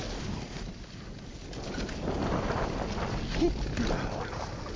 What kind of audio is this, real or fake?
real